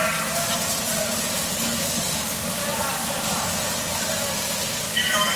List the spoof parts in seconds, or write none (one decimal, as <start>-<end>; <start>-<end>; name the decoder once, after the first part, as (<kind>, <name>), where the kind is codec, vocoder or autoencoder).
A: 1.8-2.6 (codec, DAC); 4.8-5.4